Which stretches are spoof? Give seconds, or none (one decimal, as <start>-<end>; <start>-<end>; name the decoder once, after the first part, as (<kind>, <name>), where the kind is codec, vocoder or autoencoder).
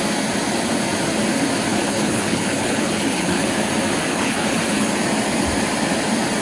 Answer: 1.7-3.5 (codec, HILCodec); 4.1-4.9